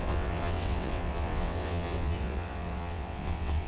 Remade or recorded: remade